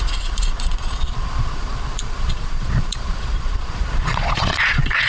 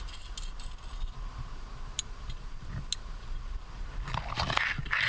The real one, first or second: second